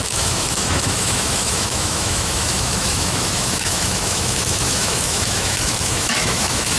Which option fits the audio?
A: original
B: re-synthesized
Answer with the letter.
B